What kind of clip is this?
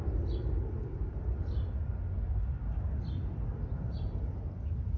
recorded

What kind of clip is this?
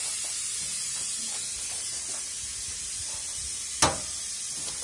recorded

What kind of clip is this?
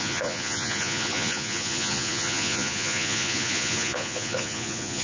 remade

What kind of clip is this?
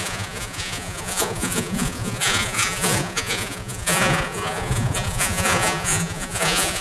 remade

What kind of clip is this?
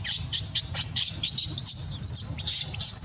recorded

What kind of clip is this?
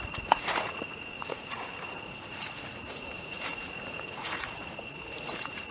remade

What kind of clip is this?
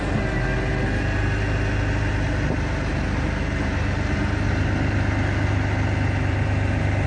recorded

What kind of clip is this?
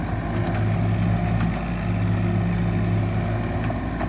recorded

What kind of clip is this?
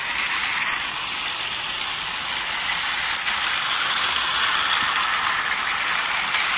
recorded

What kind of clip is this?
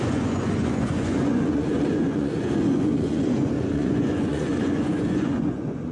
remade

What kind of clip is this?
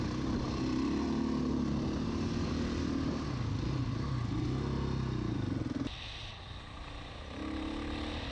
recorded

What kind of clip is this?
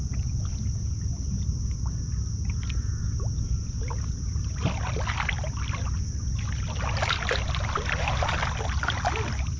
recorded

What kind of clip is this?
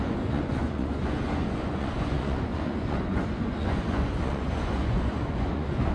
remade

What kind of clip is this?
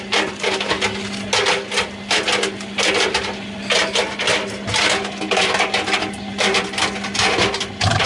recorded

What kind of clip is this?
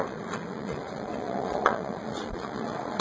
remade